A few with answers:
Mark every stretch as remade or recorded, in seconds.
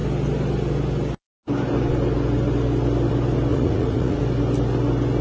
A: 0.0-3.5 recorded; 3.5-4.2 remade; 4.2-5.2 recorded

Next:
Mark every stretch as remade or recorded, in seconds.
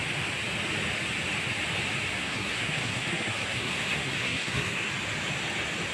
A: 0.0-2.2 recorded; 2.2-4.9 remade; 4.9-5.9 recorded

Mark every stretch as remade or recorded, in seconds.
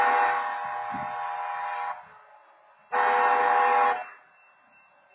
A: 0.0-5.1 recorded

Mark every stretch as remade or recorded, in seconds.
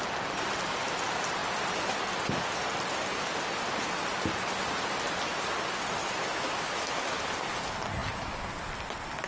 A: 0.0-6.0 recorded; 6.0-7.2 remade; 7.2-9.3 recorded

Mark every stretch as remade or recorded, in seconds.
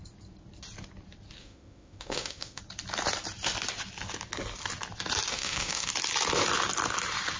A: 0.0-1.4 recorded; 1.4-2.6 remade; 2.6-5.3 recorded; 5.3-5.9 remade; 5.9-7.4 recorded